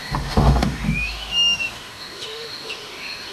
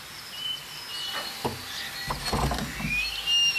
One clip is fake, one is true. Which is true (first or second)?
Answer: second